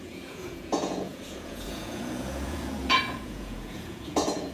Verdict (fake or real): fake